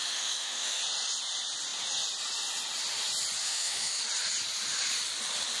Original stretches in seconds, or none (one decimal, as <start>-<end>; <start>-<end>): 0.8-3.4; 4.0-5.6